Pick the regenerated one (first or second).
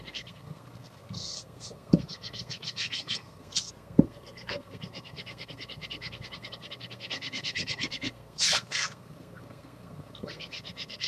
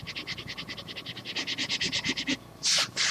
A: first